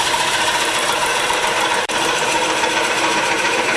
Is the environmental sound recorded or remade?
remade